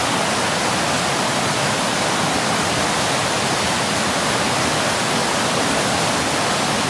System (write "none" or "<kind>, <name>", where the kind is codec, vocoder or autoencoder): none